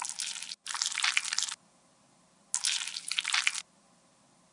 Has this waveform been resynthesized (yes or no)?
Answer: no